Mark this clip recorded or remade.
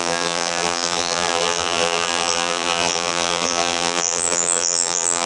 remade